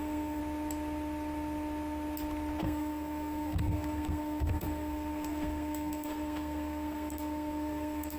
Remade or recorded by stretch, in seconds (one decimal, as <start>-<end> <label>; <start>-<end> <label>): 0.0-0.4 remade; 0.4-2.6 recorded; 2.6-8.2 remade